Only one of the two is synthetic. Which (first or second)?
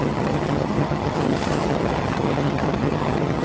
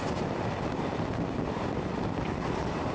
first